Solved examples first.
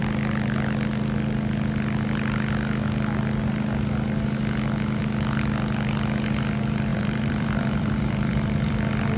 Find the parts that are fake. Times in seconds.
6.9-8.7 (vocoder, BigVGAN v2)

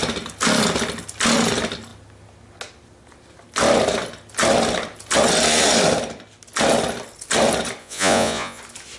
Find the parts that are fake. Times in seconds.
7.8-8.6 (vocoder, Vocos)

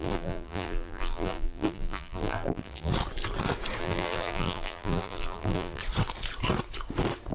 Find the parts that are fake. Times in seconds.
0.0-2.9 (vocoder, BigVGAN v2); 3.8-5.8

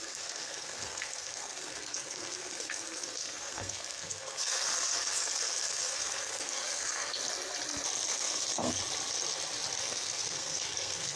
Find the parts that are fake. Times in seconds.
0.0-7.2 (codec, SNAC); 8.1-8.8; 9.8-11.2